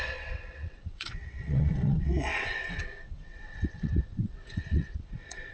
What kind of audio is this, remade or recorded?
remade